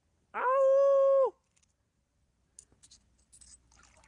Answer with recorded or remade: recorded